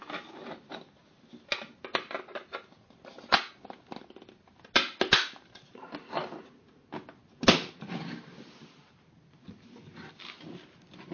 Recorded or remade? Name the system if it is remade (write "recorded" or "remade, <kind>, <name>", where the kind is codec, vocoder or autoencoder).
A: recorded